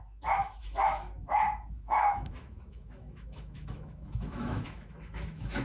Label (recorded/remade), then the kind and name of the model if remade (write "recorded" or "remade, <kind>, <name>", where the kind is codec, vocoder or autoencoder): remade, autoencoder, DAC-VAE